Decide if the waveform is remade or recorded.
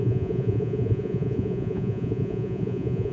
remade